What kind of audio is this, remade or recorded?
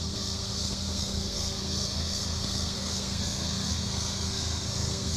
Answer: remade